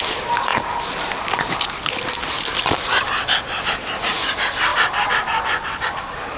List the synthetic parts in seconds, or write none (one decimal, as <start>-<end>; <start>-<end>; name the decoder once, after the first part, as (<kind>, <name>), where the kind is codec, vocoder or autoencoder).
none